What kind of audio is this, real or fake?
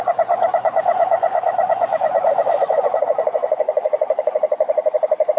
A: fake